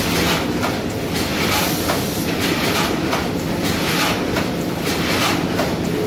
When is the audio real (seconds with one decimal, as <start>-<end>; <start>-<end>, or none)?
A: 0.0-1.3; 4.4-6.1